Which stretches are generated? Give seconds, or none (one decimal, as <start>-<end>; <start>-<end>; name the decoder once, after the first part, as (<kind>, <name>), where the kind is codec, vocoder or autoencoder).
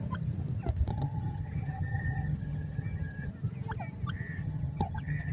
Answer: 0.9-3.3 (vocoder, HiFi-GAN); 4.4-5.3